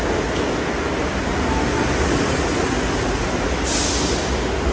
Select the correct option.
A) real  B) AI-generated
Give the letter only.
A